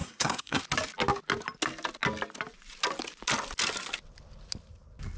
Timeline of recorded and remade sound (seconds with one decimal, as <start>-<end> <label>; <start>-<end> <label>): 0.0-0.6 remade; 0.6-5.2 recorded